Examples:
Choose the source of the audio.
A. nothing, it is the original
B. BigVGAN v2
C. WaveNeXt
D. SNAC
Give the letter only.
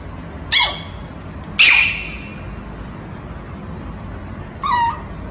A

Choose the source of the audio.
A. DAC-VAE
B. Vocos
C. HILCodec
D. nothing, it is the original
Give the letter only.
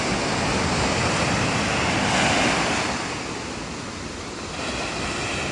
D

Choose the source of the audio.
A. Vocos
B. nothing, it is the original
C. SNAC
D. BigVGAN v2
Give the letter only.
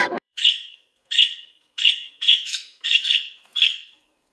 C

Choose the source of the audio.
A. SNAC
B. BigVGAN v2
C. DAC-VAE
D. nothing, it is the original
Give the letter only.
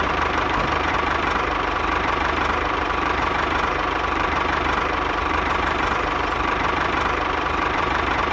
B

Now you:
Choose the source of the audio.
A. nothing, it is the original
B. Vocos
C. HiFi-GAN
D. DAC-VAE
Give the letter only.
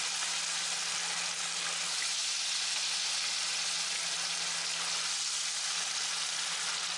A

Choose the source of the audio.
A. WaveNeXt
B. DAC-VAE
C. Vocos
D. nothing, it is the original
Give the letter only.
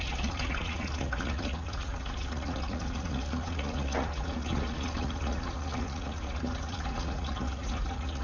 C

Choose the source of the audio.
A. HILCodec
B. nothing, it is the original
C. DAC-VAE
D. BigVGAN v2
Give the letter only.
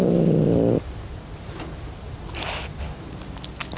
B